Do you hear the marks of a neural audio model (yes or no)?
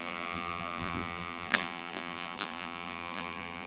yes